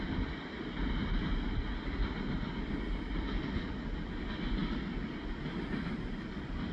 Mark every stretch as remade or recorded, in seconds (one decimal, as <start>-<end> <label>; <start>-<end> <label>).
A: 0.0-6.7 recorded